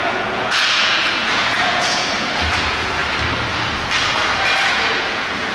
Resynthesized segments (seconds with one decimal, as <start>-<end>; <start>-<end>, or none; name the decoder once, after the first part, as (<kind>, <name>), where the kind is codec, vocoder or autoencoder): 0.0-3.0 (vocoder, Vocos); 4.7-5.5

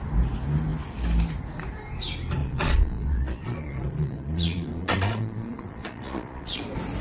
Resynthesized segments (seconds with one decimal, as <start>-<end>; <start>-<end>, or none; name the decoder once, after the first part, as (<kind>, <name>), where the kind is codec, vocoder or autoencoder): 2.4-6.6 (vocoder, Vocos)

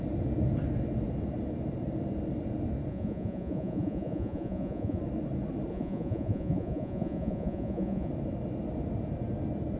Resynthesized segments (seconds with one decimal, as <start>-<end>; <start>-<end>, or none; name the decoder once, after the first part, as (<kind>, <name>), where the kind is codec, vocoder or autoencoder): 2.9-5.0 (vocoder, Vocos); 5.7-8.1